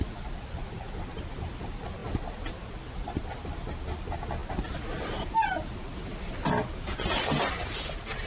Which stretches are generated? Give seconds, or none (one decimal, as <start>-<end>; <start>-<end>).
none

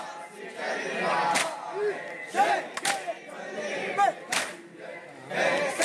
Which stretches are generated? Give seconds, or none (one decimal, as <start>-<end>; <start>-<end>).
none

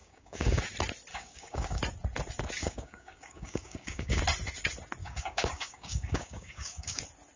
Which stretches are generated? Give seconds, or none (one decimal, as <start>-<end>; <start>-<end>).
0.0-0.6; 1.1-1.8; 2.6-4.2; 5.0-7.0

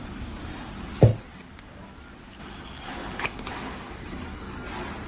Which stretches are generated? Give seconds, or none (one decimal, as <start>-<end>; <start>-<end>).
3.0-4.4

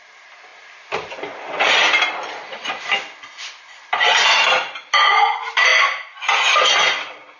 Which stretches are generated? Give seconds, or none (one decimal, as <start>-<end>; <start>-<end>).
none

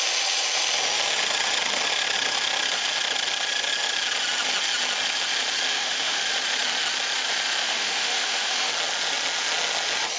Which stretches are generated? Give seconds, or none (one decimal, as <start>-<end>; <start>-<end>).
5.7-6.2; 7.6-8.7

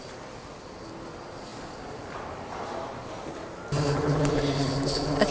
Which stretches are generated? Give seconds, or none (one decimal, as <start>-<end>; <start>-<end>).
none